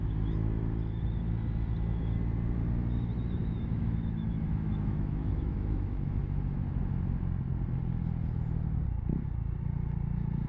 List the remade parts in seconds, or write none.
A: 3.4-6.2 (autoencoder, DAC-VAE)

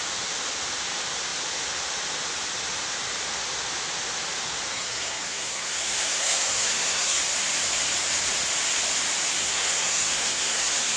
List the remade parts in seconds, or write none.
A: 4.7-7.2 (codec, SNAC); 9.4-11.0

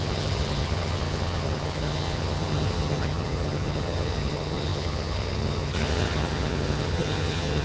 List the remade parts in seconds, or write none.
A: 0.0-7.6 (vocoder, HiFi-GAN)

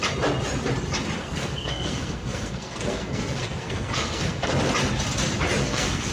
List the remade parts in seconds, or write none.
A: 1.2-4.6 (codec, SNAC); 5.6-6.1